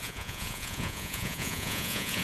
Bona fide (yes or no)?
no